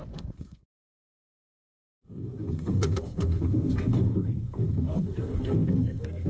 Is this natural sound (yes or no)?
no